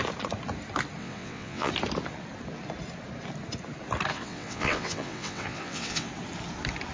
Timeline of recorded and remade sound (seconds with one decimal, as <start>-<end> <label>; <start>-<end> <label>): 0.0-1.0 recorded; 1.0-1.7 remade; 1.7-4.1 recorded; 4.1-6.1 remade; 6.1-6.9 recorded